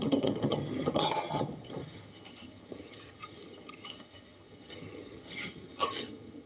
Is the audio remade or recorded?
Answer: remade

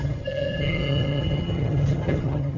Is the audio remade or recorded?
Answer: remade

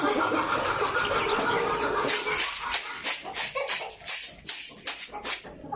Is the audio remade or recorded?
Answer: recorded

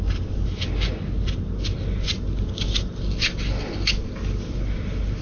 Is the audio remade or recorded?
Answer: recorded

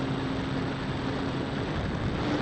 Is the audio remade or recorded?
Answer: recorded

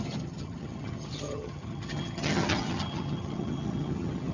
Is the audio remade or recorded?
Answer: remade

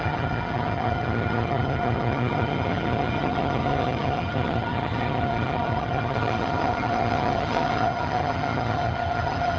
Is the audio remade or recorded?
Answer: remade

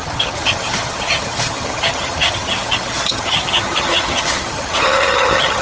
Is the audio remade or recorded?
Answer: remade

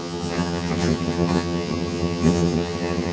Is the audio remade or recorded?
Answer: remade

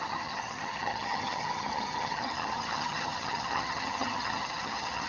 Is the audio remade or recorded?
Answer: remade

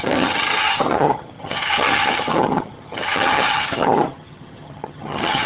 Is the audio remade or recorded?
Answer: remade